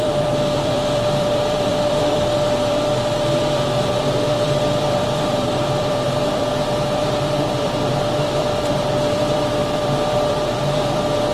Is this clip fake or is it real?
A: fake